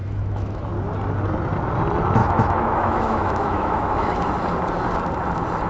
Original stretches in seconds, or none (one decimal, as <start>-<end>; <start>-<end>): 0.6-2.2; 4.2-5.7

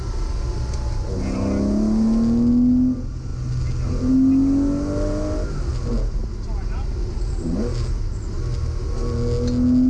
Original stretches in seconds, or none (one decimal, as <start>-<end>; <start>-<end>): 0.0-9.9

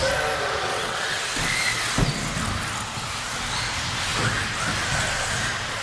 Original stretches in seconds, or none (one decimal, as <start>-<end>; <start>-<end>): 0.0-0.7; 1.2-5.8

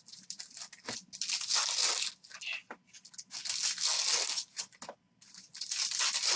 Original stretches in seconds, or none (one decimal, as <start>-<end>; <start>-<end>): 0.0-6.4

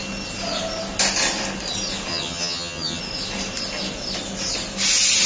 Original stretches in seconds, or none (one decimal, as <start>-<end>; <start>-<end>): 0.0-2.1; 3.0-5.3

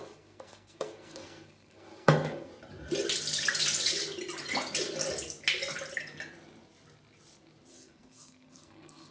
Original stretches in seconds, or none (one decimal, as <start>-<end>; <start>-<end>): 2.5-7.7

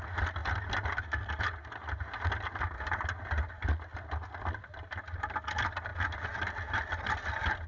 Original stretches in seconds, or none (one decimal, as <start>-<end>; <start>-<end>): 0.4-3.9; 5.9-6.7

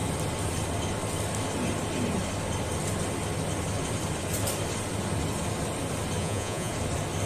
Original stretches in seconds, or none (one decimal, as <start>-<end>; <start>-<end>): 0.0-6.2; 6.7-7.3